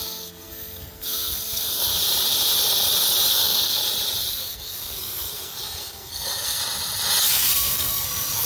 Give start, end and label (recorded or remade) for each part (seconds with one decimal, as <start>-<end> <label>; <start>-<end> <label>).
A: 0.0-1.9 remade; 1.9-3.3 recorded; 3.3-3.8 remade; 3.8-4.3 recorded; 4.3-6.6 remade; 6.6-7.2 recorded; 7.2-8.5 remade